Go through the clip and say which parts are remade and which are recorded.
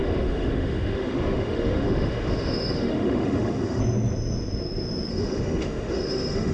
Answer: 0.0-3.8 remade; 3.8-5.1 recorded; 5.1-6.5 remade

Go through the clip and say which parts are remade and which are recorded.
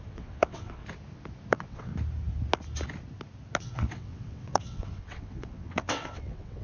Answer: 0.0-0.8 remade; 0.8-1.5 recorded; 1.5-1.9 remade; 1.9-3.6 recorded; 3.6-6.6 remade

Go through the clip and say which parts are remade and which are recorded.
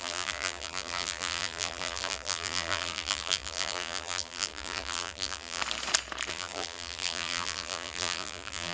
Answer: 0.0-5.6 remade; 5.6-6.3 recorded; 6.3-8.7 remade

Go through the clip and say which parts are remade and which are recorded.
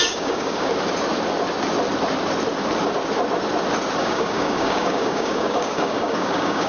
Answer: 0.0-0.7 remade; 0.7-4.0 recorded; 4.0-6.7 remade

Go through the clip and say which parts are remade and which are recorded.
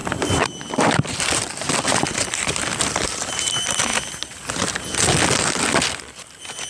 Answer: 0.0-3.9 remade; 3.9-6.7 recorded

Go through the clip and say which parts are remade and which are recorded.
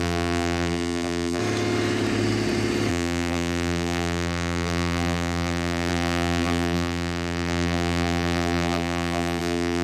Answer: 0.0-1.4 remade; 1.4-2.9 recorded; 2.9-9.8 remade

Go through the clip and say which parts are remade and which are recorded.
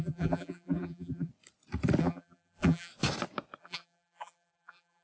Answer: 0.0-1.3 remade; 1.3-2.0 recorded; 2.0-2.9 remade; 2.9-3.6 recorded; 3.6-5.0 remade